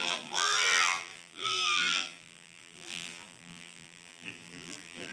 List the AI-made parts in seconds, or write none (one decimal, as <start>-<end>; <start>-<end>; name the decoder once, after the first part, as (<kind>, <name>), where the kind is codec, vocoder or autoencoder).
0.0-5.1 (vocoder, BigVGAN v2)